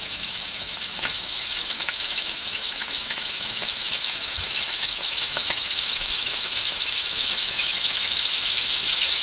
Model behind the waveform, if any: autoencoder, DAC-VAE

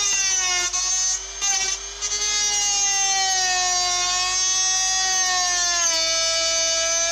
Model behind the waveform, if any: none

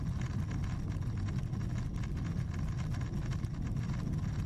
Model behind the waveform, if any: none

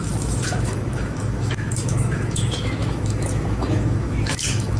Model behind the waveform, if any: autoencoder, DAC-VAE